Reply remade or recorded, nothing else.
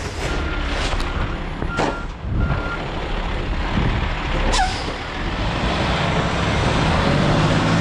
recorded